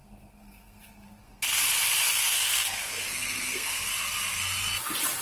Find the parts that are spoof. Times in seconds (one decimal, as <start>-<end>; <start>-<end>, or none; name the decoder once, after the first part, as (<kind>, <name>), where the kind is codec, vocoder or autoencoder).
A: 0.0-1.6 (codec, SNAC); 2.1-3.9